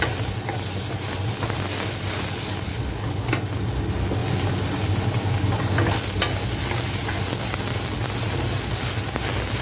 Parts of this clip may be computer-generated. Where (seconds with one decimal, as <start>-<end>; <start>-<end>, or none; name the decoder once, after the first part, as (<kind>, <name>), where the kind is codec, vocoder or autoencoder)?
2.7-3.3 (codec, HILCodec)